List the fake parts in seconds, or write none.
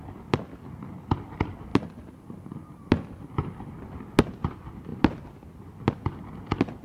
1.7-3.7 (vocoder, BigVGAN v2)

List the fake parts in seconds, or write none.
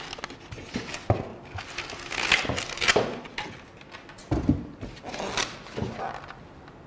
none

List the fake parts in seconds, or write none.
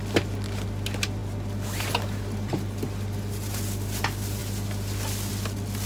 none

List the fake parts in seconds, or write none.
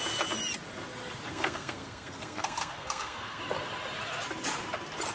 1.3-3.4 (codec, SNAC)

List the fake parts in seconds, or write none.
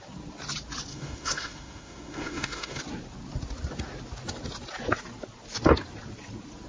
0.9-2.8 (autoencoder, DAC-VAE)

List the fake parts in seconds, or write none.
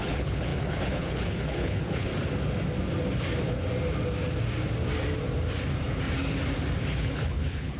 0.0-2.1 (codec, HILCodec); 6.8-7.8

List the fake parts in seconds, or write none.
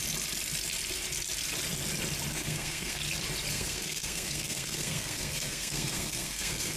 2.3-3.0 (codec, SNAC); 3.5-6.8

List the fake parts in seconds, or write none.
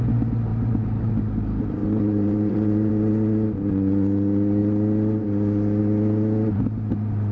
0.5-1.1 (vocoder, BigVGAN v2); 1.8-2.9